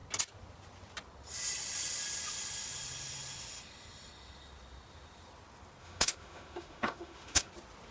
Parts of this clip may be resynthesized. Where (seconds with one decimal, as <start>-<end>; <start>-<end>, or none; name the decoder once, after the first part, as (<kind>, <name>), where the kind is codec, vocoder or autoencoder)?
5.8-7.5 (autoencoder, DAC-VAE)